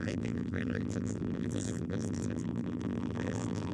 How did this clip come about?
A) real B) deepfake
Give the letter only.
B